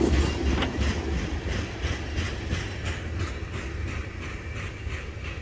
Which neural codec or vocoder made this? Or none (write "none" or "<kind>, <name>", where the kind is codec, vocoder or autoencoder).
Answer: none